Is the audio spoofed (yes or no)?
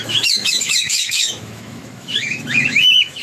yes